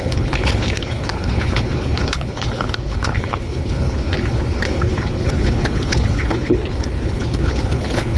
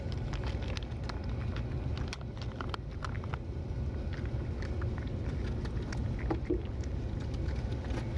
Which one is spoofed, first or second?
first